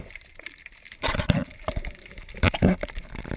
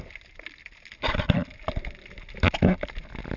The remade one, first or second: first